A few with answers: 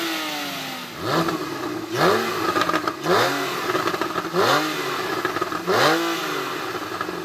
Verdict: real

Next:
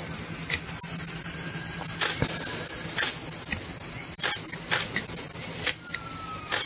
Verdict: real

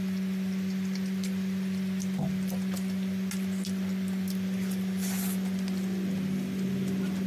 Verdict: real